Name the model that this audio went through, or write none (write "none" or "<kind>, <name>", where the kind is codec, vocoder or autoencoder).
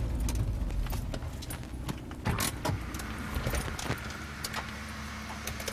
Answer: none